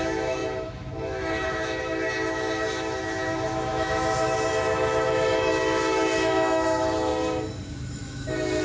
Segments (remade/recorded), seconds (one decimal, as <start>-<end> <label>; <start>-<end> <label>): 0.0-7.1 remade; 7.1-7.7 recorded; 7.7-8.6 remade